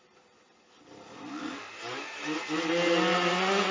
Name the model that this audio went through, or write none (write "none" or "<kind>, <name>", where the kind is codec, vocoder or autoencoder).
none